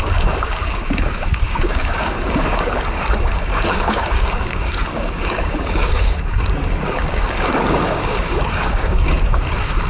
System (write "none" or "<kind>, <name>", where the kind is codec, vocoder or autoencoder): codec, DAC